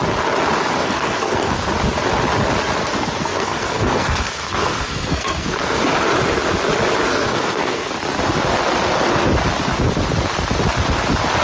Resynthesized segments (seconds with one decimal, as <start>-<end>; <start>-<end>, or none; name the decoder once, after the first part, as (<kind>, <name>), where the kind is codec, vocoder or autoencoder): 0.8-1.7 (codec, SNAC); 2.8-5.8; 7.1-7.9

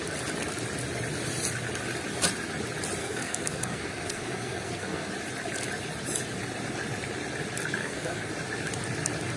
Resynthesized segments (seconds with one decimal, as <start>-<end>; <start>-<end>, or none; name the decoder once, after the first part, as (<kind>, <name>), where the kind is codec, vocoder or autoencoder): 3.0-5.1 (codec, SNAC); 7.8-8.3

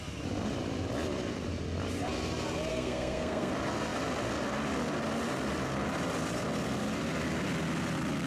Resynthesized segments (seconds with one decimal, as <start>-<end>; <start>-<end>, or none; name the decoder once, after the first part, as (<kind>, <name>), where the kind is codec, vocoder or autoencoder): 2.7-3.5 (codec, SNAC)

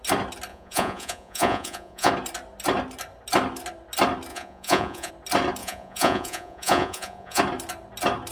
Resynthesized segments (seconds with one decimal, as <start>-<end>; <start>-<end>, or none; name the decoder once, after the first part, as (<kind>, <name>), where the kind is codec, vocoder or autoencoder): 0.5-2.1 (vocoder, Vocos); 4.3-5.1; 5.6-7.4

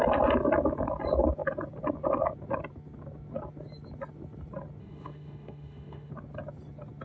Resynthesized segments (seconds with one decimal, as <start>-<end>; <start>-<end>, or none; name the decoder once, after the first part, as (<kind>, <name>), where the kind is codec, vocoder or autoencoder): 4.8-6.1 (autoencoder, DAC-VAE)

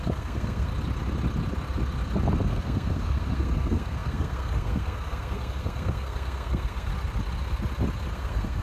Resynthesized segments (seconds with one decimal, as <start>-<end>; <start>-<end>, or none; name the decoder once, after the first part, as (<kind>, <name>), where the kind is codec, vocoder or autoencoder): 0.0-0.7 (codec, SNAC); 2.5-6.9; 8.1-8.6